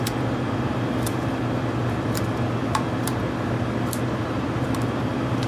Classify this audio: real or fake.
fake